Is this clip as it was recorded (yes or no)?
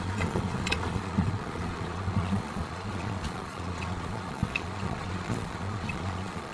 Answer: no